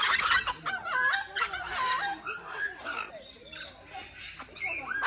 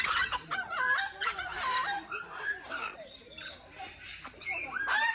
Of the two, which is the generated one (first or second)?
second